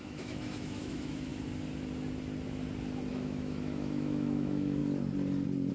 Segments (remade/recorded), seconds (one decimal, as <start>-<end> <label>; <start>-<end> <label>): 0.0-1.3 remade; 1.3-3.1 recorded; 3.1-4.8 remade; 4.8-5.7 recorded